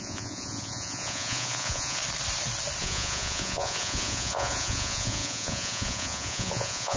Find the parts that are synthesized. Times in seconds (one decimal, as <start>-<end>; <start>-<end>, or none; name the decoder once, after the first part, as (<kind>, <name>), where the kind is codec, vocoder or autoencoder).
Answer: 0.0-2.0 (vocoder, Vocos); 2.8-7.0